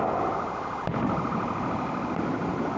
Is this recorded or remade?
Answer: recorded